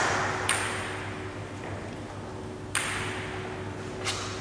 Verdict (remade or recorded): recorded